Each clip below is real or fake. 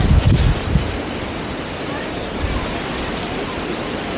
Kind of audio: fake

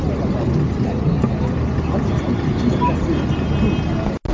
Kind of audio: real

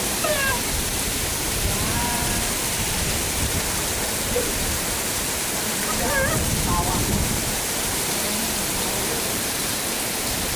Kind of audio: fake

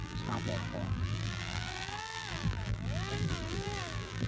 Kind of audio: fake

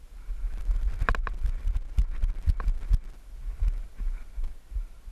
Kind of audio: real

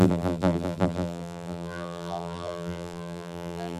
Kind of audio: fake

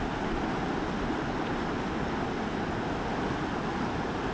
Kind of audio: real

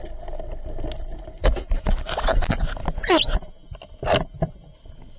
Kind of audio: real